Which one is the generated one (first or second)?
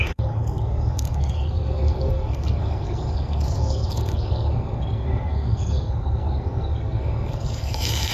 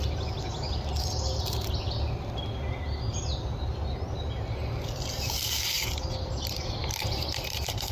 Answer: first